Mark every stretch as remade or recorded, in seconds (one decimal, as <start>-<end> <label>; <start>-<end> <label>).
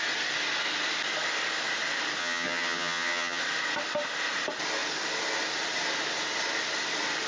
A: 0.0-2.2 recorded; 2.2-3.4 remade; 3.4-7.3 recorded